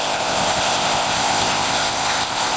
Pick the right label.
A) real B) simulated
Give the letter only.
B